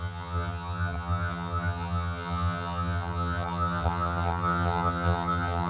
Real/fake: fake